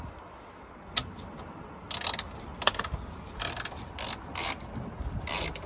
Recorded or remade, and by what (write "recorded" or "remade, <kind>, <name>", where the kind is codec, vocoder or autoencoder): recorded